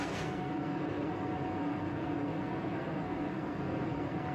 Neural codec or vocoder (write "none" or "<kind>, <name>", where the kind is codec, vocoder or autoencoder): codec, SNAC